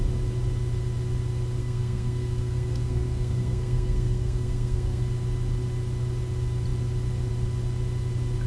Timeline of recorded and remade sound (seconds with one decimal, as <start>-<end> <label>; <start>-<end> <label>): 0.0-1.6 recorded; 1.6-5.0 remade; 5.0-8.5 recorded